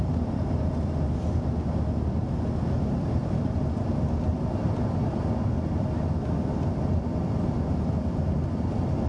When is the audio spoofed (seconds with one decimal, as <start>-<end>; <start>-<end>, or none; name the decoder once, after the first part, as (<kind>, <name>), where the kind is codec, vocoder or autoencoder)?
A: none